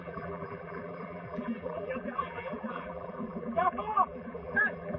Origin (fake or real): fake